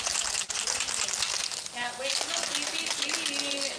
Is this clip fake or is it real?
real